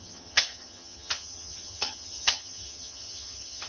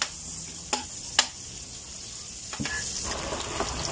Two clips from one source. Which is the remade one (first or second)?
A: first